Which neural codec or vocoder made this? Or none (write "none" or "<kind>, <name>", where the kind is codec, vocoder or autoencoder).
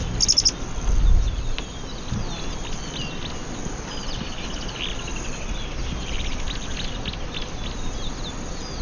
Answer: none